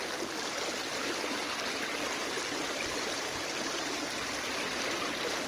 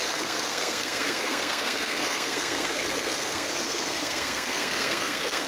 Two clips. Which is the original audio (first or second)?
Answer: first